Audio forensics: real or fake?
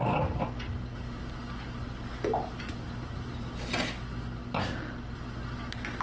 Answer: real